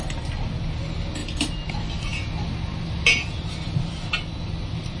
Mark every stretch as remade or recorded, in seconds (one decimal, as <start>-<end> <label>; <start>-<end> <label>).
0.0-5.0 recorded